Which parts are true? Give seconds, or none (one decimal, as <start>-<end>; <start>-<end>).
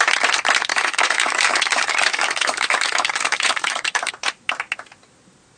0.0-0.7; 4.1-5.6